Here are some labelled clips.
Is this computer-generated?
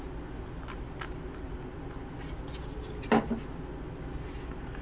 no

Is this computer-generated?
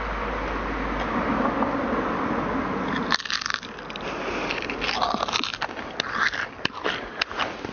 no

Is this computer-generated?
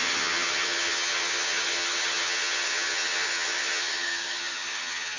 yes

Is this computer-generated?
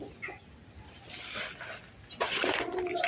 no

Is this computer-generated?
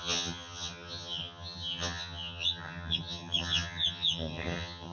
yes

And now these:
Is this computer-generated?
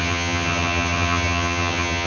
yes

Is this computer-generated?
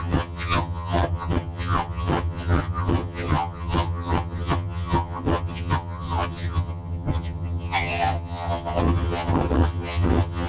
yes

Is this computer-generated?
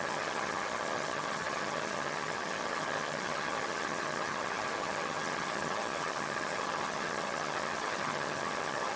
yes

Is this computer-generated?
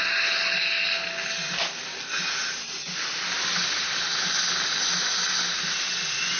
no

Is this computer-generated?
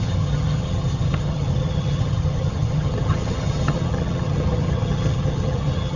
yes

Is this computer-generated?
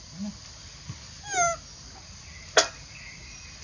no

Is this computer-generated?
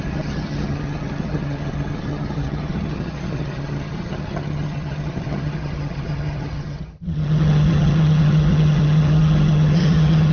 yes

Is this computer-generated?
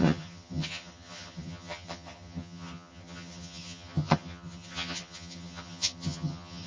yes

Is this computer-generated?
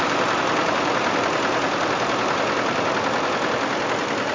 no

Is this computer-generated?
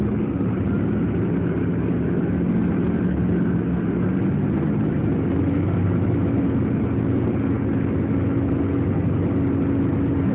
no